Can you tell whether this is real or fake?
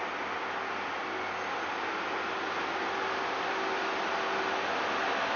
real